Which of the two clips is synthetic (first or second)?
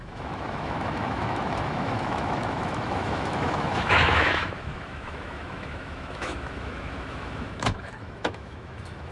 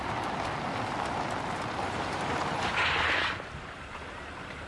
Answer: first